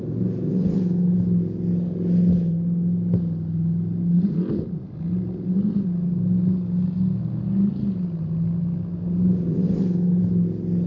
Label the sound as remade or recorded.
recorded